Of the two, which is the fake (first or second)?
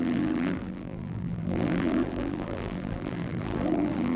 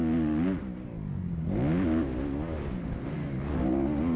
first